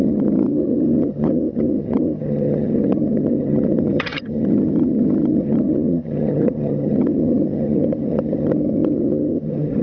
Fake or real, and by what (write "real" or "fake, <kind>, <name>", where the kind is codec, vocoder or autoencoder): fake, vocoder, HiFi-GAN